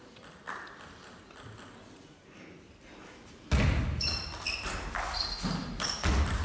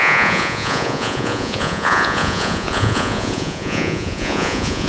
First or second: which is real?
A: first